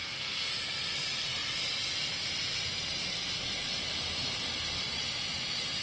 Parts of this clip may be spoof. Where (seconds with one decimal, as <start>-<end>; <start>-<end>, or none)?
0.0-0.5